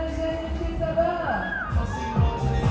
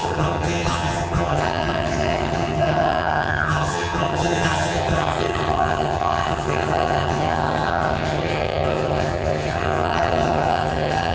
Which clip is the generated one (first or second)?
second